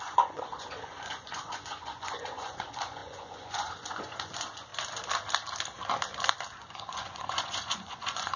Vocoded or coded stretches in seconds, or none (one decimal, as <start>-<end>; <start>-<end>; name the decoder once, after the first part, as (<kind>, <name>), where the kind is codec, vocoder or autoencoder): 0.0-4.7 (vocoder, Vocos); 6.6-8.4